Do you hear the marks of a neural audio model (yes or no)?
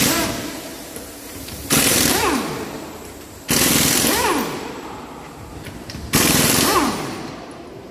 yes